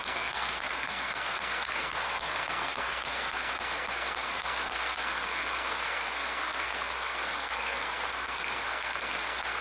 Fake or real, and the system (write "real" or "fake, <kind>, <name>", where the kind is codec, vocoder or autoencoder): fake, codec, SNAC